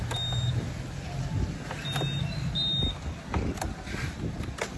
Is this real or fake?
real